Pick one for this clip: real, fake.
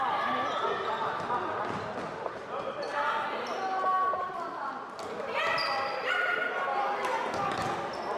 real